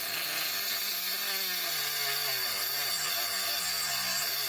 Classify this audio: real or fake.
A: real